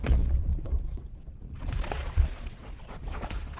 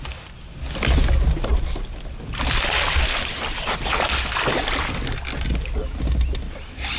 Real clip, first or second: second